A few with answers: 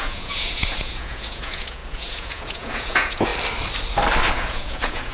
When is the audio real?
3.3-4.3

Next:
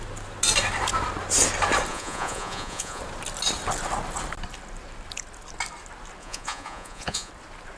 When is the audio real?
0.0-1.9; 3.0-6.2; 7.3-7.8

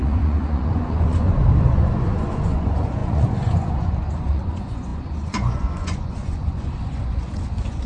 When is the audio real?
none

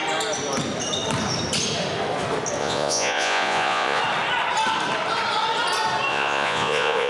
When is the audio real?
0.0-2.6; 4.0-6.1

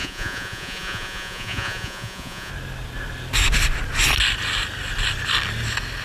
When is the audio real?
2.5-6.0